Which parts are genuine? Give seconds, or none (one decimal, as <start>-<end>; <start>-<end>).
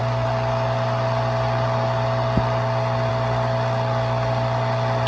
0.0-5.1